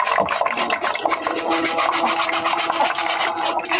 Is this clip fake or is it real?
real